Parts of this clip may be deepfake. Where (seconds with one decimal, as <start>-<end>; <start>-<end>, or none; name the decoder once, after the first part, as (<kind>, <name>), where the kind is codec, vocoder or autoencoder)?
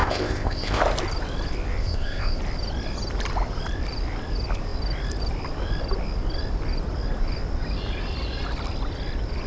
0.0-0.8 (codec, ZipCodec); 1.8-2.4